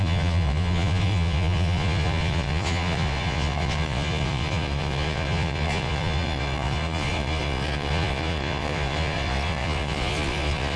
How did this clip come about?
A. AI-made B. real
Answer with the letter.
A